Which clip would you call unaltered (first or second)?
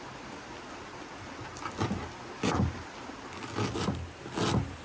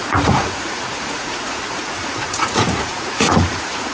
first